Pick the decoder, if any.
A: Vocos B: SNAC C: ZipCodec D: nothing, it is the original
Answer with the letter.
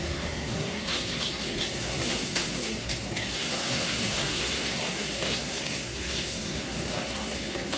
B